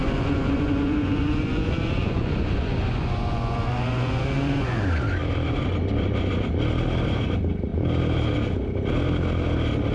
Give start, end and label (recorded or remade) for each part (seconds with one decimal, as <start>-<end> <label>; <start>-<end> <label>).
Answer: 0.0-4.8 remade; 4.8-9.9 recorded